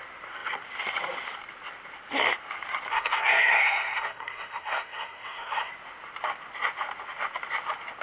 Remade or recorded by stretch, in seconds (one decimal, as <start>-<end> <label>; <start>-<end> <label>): 0.0-2.9 recorded; 2.9-5.7 remade; 5.7-8.0 recorded